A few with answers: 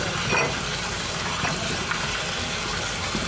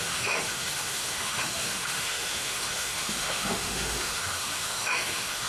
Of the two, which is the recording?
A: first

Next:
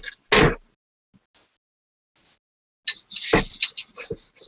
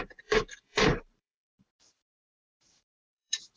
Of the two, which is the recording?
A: first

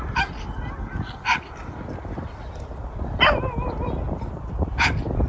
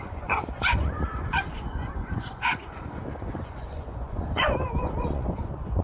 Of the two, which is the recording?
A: first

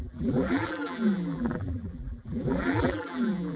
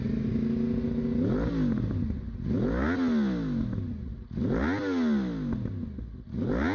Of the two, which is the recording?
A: second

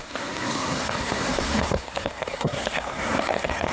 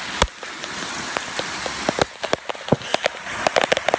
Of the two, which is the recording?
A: second